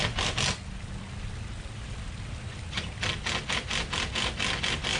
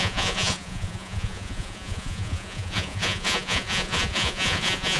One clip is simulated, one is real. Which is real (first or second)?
first